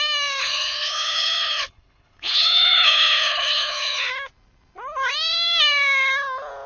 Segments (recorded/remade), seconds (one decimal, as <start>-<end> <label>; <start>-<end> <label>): 0.0-0.4 recorded; 0.4-4.1 remade; 4.1-6.7 recorded